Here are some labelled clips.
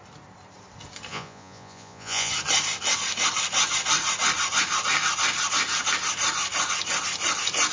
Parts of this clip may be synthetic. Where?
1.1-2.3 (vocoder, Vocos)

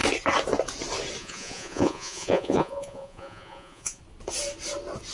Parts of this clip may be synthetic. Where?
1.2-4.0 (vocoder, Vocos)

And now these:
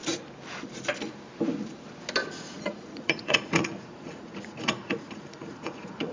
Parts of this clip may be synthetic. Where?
2.2-6.1 (vocoder, Vocos)

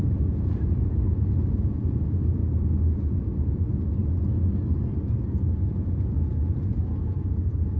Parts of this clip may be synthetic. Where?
0.0-2.4 (vocoder, Vocos); 2.9-4.0; 5.3-7.8